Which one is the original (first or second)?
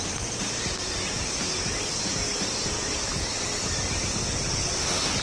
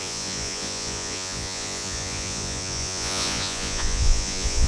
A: first